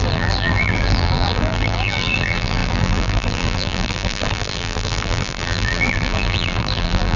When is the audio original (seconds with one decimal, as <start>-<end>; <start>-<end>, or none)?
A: none